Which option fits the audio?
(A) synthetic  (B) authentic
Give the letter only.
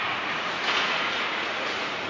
A